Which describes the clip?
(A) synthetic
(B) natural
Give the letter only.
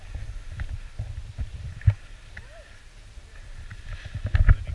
B